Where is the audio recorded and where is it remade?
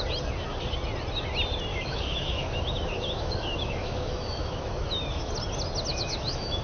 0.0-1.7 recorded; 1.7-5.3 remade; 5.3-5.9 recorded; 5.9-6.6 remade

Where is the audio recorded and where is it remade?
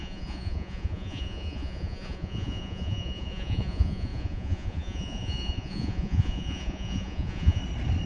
0.0-7.6 remade; 7.6-8.1 recorded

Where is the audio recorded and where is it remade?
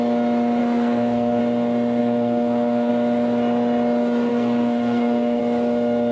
0.0-0.6 recorded; 0.6-1.4 remade; 1.4-2.0 recorded; 2.0-2.9 remade; 2.9-4.3 recorded; 4.3-5.4 remade; 5.4-6.1 recorded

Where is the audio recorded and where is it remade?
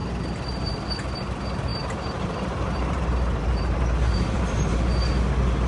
0.0-1.7 recorded; 1.7-4.8 remade; 4.8-5.7 recorded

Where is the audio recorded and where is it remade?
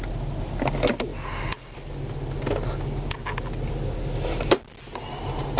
0.0-5.6 recorded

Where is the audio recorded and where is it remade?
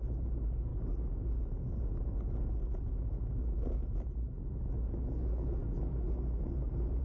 0.0-7.0 recorded